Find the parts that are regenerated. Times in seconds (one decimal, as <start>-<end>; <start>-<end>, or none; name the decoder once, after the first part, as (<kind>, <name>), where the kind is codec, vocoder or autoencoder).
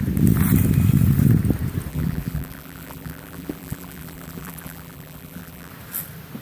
1.9-5.7 (vocoder, BigVGAN v2)